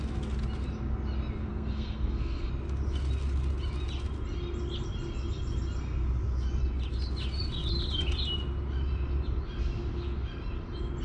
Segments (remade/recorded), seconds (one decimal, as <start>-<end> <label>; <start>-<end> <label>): 0.0-1.5 recorded; 1.5-2.5 remade; 2.5-11.0 recorded